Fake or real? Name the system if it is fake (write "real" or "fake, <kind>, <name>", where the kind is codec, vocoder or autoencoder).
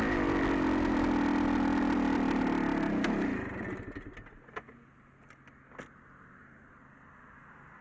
real